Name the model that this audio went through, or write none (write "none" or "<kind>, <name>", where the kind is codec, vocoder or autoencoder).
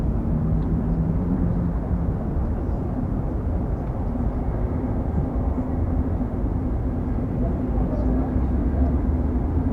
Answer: none